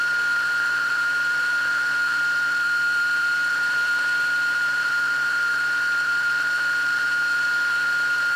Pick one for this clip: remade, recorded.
remade